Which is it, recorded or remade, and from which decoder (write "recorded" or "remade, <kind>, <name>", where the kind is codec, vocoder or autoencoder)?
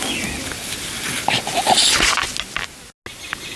recorded